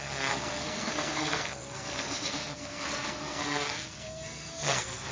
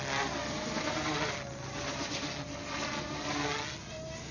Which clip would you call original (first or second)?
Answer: second